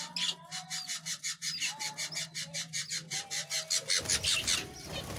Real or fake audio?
real